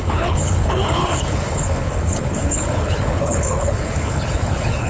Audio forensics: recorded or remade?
remade